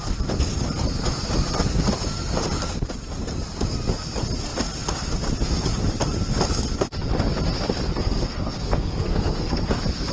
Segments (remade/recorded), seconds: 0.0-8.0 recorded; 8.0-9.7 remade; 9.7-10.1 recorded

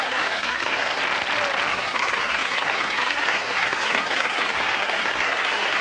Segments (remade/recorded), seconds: 0.0-1.0 remade; 1.0-1.7 recorded; 1.7-5.8 remade

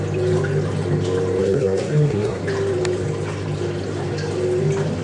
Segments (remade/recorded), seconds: 0.0-1.4 recorded; 1.4-2.4 remade; 2.4-5.0 recorded

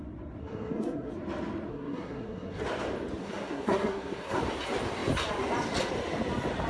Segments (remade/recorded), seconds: 0.0-0.4 recorded; 0.4-1.1 remade; 1.1-1.7 recorded; 1.7-2.6 remade; 2.6-3.2 recorded; 3.2-4.4 remade; 4.4-6.7 recorded